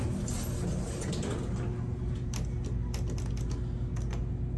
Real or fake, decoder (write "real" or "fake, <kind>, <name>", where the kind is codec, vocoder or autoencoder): real